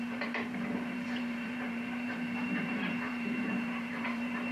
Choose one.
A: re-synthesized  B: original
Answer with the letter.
A